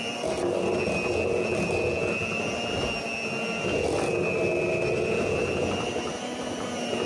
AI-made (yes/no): no